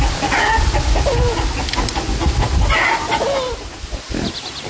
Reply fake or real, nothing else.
real